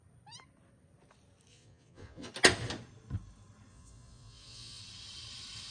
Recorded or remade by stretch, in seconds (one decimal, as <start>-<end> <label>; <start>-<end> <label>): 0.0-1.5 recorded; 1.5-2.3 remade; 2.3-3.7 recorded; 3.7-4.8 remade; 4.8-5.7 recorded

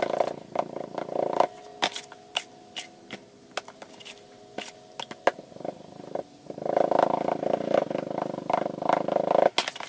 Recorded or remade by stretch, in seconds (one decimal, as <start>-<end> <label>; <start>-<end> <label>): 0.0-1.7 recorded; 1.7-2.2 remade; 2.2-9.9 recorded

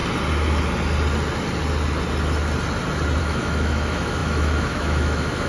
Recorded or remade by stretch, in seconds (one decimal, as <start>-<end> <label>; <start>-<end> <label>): 0.0-3.2 recorded; 3.2-5.5 remade

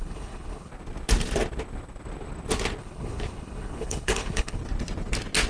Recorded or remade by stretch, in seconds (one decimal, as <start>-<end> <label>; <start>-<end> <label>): 0.0-0.7 remade; 0.7-2.8 recorded; 2.8-4.6 remade; 4.6-5.5 recorded

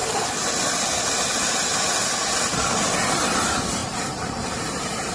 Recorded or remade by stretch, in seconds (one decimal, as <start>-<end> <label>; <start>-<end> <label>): 0.0-3.8 recorded; 3.8-5.1 remade